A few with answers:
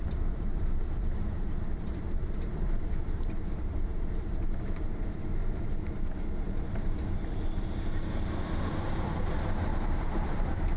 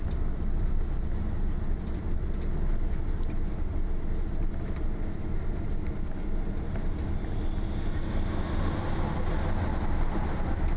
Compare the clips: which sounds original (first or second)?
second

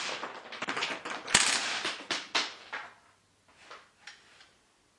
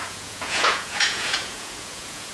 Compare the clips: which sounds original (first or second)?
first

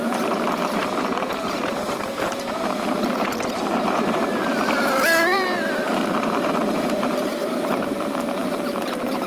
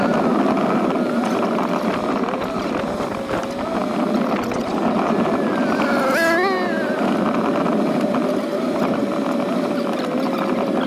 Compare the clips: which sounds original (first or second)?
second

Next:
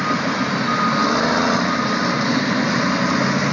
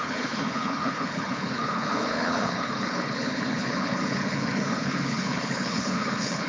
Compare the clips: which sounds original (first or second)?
first